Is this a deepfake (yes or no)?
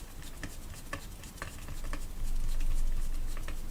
no